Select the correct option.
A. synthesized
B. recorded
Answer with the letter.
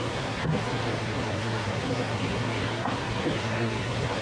A